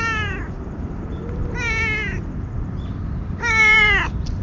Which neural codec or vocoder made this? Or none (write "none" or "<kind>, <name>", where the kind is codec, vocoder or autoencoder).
vocoder, BigVGAN v2